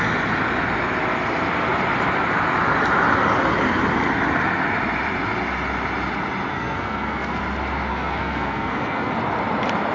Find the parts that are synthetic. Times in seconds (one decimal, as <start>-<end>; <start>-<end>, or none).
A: 6.5-7.4; 7.9-9.1